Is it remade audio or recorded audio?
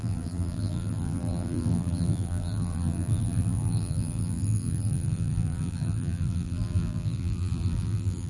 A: remade